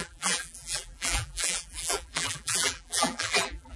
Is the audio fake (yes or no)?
yes